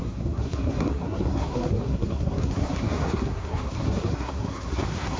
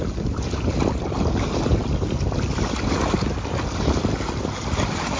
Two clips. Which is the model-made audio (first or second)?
first